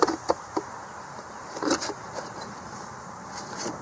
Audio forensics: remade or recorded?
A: remade